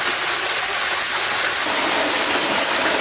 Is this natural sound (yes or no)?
yes